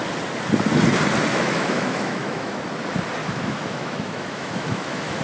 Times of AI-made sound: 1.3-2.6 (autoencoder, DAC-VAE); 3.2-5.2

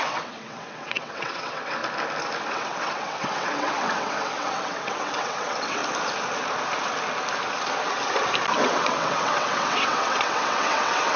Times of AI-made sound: 0.0-1.8 (vocoder, WaveNeXt); 2.5-5.8; 8.6-11.2

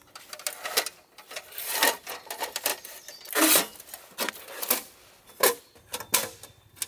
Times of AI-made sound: none

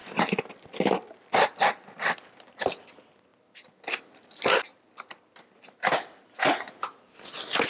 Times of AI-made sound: none

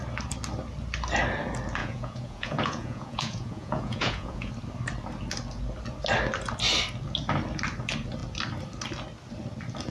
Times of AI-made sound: 1.8-4.5 (vocoder, Vocos)